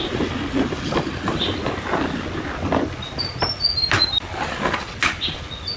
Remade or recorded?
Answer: recorded